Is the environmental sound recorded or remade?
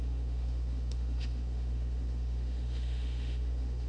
remade